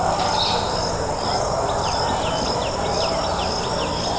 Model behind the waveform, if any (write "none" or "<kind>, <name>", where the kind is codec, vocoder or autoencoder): none